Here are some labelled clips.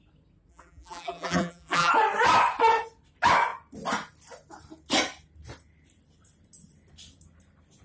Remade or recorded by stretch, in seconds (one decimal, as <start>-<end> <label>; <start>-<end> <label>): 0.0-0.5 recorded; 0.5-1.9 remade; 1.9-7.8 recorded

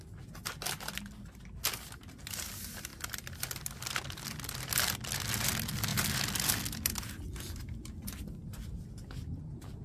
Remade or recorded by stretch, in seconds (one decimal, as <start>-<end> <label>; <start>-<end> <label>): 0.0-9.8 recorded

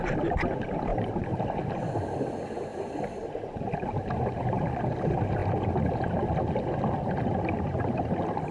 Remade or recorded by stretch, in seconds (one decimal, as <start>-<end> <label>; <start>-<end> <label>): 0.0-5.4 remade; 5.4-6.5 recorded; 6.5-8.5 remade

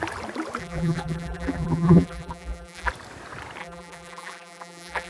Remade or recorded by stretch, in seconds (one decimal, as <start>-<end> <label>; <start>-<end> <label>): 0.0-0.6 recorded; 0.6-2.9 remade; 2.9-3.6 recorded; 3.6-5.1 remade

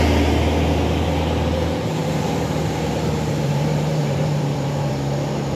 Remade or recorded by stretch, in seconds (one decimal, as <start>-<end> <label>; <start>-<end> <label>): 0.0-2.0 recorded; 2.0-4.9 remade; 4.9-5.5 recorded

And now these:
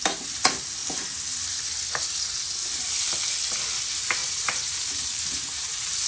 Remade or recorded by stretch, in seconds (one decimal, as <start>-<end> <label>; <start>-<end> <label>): 0.0-0.8 recorded; 0.8-1.7 remade; 1.7-2.6 recorded; 2.6-3.1 remade; 3.1-4.2 recorded; 4.2-6.1 remade

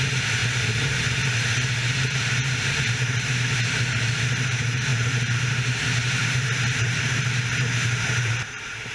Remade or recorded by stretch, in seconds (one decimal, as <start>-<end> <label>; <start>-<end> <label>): 0.0-8.9 remade